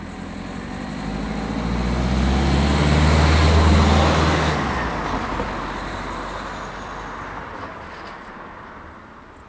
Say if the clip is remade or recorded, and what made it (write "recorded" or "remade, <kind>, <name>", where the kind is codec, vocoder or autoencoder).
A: recorded